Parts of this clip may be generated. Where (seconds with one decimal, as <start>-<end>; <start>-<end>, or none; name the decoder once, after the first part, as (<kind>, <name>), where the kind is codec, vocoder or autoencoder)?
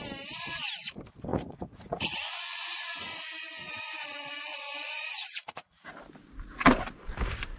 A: 1.3-5.9 (vocoder, Vocos)